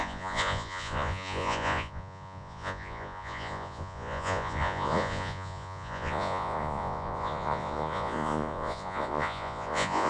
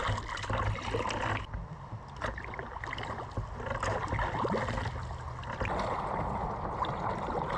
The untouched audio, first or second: second